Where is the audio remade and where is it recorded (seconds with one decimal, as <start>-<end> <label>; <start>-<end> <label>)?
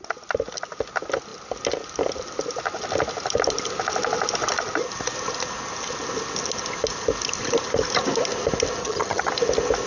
0.0-8.8 recorded; 8.8-9.3 remade; 9.3-9.9 recorded